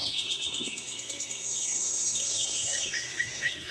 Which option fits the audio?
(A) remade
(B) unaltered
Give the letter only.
A